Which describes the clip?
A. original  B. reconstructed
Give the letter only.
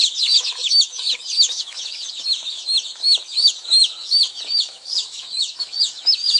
B